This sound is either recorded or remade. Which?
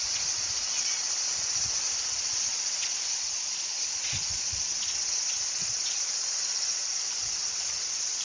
remade